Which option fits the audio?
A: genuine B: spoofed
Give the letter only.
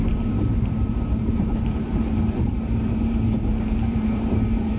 B